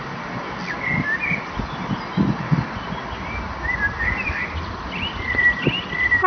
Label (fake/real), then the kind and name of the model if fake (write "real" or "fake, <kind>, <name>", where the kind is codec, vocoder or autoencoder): real